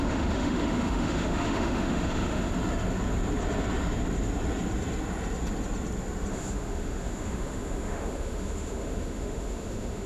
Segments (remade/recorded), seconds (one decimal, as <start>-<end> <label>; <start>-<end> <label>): 0.0-2.5 remade; 2.5-6.3 recorded; 6.3-10.1 remade